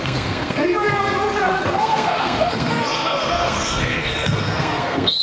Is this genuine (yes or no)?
no